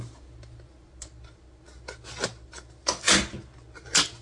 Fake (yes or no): no